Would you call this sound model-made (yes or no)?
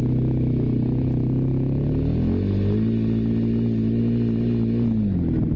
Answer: no